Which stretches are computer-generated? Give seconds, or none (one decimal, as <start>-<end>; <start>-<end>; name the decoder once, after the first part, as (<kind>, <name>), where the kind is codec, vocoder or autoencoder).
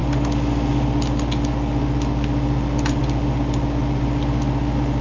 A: none